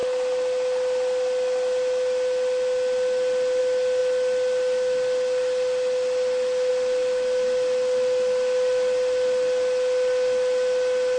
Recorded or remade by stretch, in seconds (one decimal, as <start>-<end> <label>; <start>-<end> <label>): 0.0-11.2 recorded